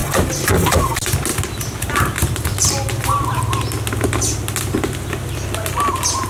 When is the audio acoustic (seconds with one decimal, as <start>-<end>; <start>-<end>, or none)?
0.0-6.3